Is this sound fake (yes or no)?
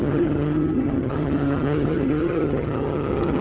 yes